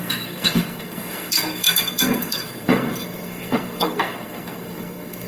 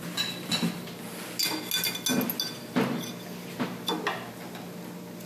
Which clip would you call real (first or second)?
second